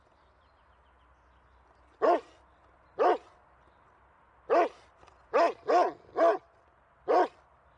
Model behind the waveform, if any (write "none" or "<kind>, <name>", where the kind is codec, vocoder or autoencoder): none